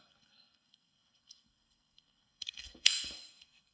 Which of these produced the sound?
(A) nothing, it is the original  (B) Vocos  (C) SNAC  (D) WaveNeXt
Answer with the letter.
C